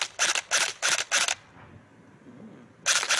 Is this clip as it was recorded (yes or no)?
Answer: yes